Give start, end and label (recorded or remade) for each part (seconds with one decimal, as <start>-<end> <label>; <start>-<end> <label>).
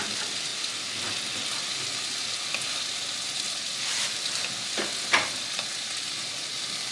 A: 0.0-6.9 recorded